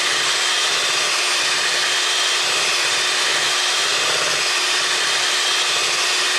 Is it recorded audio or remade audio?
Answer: recorded